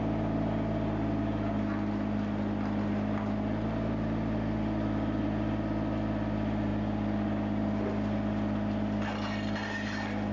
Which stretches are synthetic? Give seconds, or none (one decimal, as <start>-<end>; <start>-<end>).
none